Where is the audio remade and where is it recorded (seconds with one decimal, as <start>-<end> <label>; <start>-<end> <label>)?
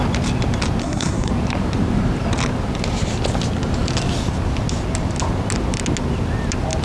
0.0-0.8 recorded; 0.8-1.3 remade; 1.3-6.8 recorded